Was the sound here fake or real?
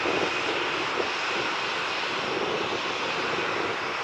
real